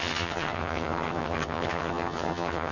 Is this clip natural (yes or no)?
no